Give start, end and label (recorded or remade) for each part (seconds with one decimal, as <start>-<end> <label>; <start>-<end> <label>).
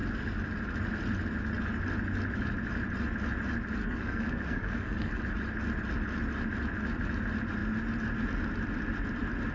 0.0-3.8 recorded; 3.8-5.2 remade; 5.2-9.5 recorded